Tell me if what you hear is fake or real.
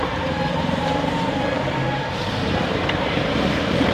fake